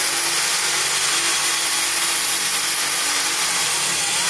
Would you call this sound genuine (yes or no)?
yes